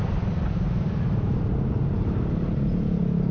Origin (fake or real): real